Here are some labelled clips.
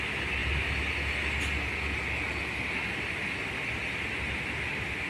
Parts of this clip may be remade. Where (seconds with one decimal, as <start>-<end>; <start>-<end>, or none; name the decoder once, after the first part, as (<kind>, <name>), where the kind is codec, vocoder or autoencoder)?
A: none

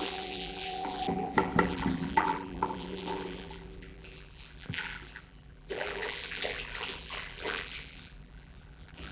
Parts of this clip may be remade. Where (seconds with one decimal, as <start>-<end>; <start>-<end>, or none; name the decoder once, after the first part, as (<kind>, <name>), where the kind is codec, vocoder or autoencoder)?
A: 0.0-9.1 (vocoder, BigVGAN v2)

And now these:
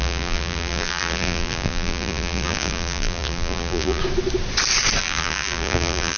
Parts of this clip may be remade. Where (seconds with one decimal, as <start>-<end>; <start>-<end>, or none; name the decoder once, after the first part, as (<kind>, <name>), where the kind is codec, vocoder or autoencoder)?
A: 0.0-4.0 (vocoder, BigVGAN v2); 5.0-6.2